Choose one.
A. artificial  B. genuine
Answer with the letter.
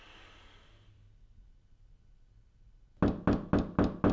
B